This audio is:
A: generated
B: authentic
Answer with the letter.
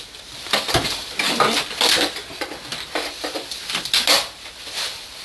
A